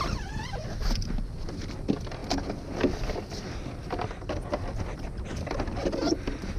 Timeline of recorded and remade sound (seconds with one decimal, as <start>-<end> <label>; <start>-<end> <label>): 0.0-6.6 recorded

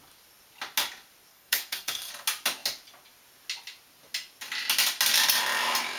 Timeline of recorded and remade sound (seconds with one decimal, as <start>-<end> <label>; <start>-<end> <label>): 0.0-1.3 recorded; 1.3-2.1 remade; 2.1-6.0 recorded

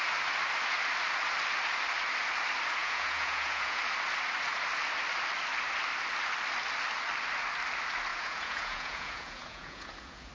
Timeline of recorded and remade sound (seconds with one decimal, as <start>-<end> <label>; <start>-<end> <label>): 0.0-2.8 recorded; 2.8-3.8 remade; 3.8-8.1 recorded; 8.1-10.3 remade